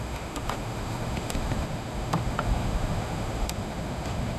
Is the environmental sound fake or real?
fake